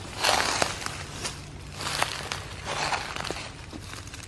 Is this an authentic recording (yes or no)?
yes